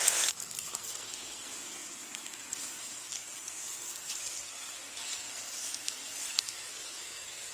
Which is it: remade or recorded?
remade